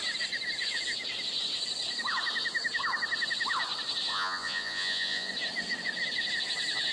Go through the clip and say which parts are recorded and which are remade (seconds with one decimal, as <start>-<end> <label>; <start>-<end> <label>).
0.0-4.1 recorded; 4.1-5.3 remade; 5.3-6.9 recorded